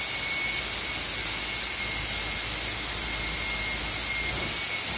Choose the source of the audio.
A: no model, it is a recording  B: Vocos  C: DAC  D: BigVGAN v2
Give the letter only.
A